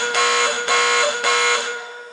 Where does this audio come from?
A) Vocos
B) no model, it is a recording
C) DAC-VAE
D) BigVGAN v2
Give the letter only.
C